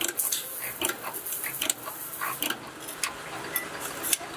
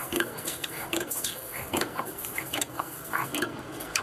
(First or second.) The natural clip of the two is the first